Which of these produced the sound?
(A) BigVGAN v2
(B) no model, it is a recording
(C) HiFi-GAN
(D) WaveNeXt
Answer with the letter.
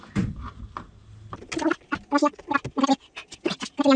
B